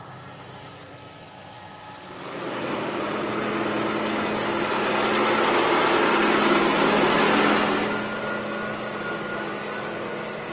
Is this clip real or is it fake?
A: real